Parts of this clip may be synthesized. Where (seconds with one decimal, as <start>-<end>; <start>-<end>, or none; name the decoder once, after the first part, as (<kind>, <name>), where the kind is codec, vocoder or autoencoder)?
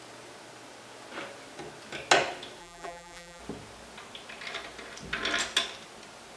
2.6-3.4 (vocoder, BigVGAN v2)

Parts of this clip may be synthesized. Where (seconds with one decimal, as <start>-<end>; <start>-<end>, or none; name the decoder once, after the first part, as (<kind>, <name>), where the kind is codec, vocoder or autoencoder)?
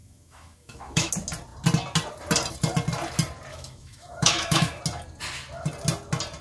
0.0-1.1 (autoencoder, DAC-VAE); 3.5-4.8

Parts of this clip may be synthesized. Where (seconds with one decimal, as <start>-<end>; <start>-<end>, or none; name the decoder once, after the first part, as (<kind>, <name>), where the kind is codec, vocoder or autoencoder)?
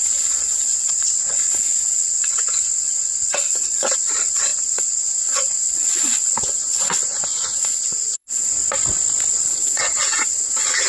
0.0-8.6 (vocoder, WaveNeXt); 9.3-10.9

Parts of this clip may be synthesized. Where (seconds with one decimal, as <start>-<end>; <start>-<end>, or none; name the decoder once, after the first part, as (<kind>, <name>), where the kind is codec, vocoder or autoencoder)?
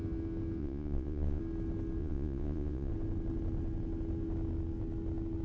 0.6-1.4 (vocoder, Vocos); 2.0-2.9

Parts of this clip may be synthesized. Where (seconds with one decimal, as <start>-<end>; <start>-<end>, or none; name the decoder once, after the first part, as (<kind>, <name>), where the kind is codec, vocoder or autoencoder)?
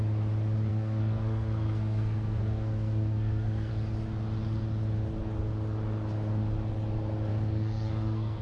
0.7-3.7 (codec, SNAC); 7.3-8.4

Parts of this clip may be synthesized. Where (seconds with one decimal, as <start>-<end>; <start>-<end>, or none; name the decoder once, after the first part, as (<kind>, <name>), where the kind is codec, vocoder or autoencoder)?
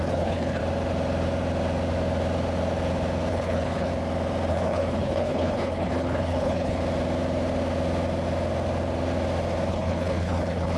0.0-0.6 (codec, HILCodec); 3.3-3.9; 4.5-6.8; 9.7-10.8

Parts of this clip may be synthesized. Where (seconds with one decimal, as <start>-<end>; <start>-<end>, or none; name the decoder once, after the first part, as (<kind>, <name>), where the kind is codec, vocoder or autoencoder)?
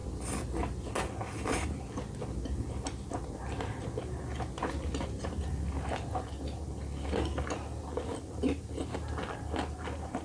none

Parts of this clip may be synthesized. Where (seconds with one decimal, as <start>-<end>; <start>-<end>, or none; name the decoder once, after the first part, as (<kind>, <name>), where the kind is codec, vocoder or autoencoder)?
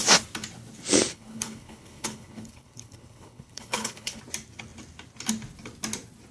1.1-4.2 (codec, HILCodec)